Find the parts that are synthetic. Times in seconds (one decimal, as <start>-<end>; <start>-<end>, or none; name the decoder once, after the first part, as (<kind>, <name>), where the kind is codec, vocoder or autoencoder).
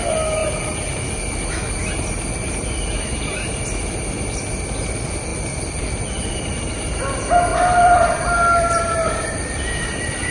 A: 5.3-5.8 (vocoder, BigVGAN v2); 7.5-9.1